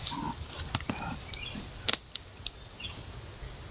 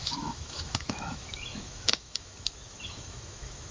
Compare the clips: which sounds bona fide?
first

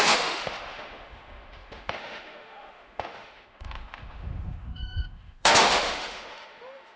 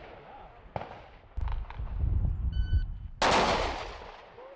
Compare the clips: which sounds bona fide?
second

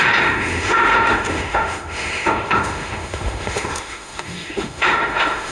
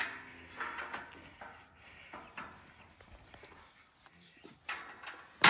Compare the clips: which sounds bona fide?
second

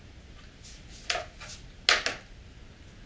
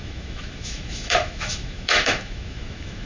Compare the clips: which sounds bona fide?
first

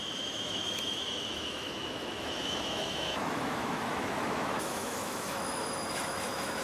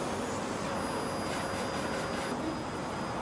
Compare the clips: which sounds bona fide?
second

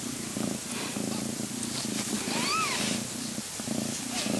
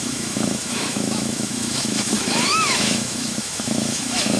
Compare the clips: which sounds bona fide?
first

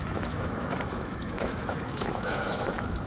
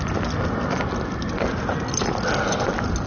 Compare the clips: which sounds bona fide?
second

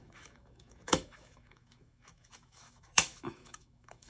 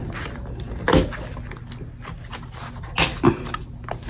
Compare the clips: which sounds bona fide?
second